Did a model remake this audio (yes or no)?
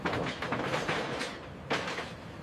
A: no